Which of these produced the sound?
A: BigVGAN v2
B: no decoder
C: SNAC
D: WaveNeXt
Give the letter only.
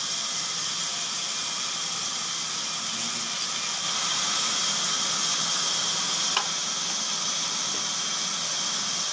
B